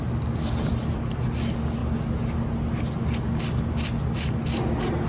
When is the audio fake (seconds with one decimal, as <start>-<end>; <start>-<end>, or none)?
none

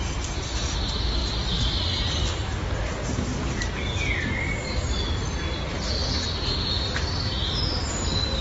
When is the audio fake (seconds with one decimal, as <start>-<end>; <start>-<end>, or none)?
1.2-3.6

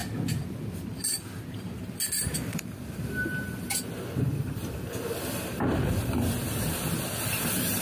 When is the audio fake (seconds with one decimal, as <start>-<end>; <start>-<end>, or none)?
0.5-1.1; 3.5-7.8